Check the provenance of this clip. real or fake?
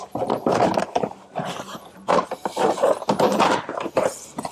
fake